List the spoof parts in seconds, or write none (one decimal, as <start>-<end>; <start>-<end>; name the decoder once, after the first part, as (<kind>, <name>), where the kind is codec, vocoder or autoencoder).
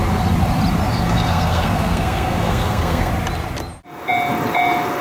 0.9-3.1 (codec, SNAC)